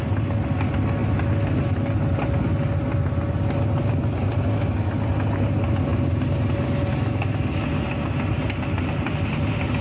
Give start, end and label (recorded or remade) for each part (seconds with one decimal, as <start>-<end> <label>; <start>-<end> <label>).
0.0-9.8 recorded